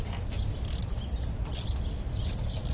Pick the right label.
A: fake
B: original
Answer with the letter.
B